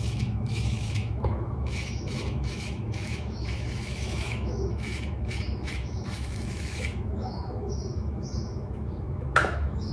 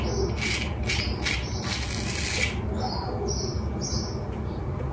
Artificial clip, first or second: first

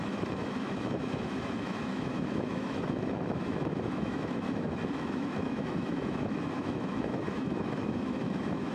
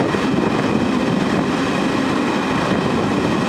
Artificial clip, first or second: first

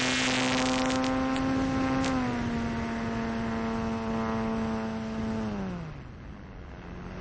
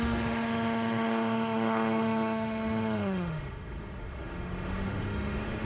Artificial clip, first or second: second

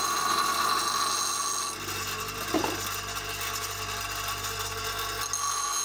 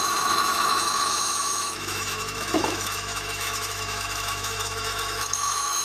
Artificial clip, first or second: second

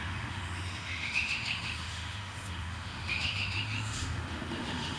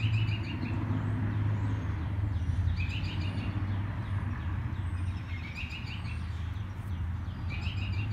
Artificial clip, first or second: first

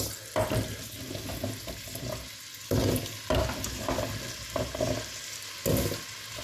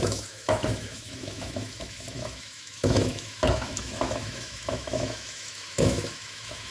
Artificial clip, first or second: second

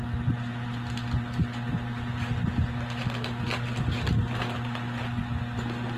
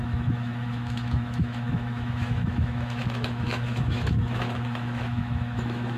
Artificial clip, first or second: second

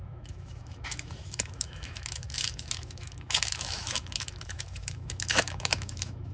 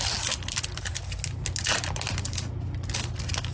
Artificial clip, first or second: first